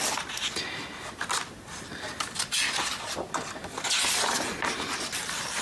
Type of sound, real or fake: real